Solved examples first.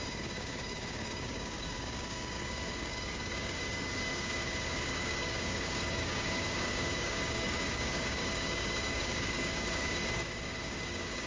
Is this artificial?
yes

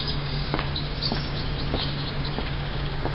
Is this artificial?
yes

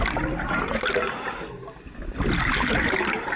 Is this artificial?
no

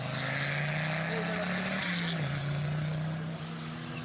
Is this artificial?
no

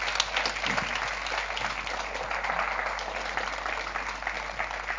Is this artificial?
no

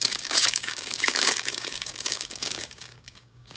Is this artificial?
yes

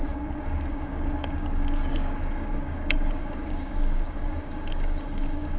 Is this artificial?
yes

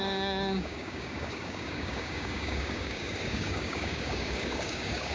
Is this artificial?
yes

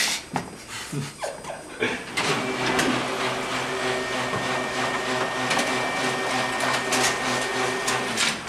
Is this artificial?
no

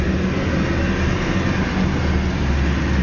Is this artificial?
no